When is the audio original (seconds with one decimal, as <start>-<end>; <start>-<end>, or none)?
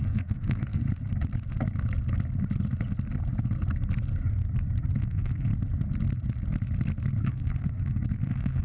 0.8-5.0; 5.5-7.2